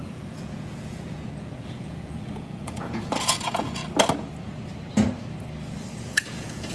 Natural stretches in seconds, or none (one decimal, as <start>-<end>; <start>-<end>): 3.8-6.0

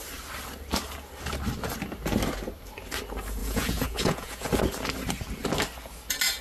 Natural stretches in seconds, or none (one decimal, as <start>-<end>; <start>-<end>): 0.0-3.4; 4.5-6.4

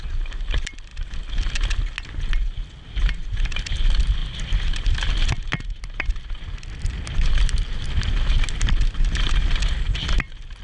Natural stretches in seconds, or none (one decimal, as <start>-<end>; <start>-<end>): 0.0-10.6

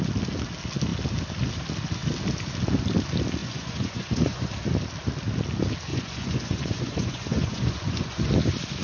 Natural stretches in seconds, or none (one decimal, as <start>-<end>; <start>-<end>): 0.0-3.4; 4.5-5.9; 8.3-8.8

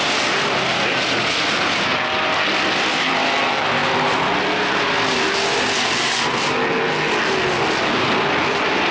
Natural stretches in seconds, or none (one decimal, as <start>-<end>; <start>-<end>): 0.0-8.9

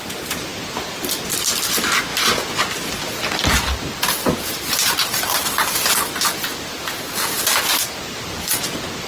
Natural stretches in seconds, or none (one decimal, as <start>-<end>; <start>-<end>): 0.0-9.1

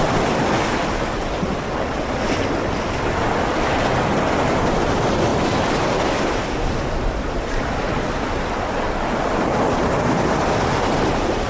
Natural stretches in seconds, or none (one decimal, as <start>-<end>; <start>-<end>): 0.0-11.5